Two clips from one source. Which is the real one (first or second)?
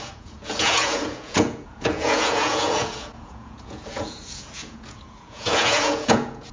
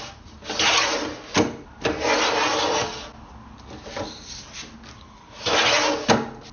second